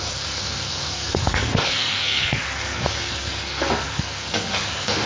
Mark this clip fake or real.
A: fake